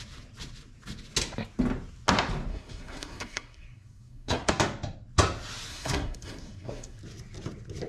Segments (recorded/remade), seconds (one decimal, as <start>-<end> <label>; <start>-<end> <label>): 0.0-2.5 recorded; 2.5-4.5 remade; 4.5-5.7 recorded; 5.7-7.0 remade; 7.0-7.9 recorded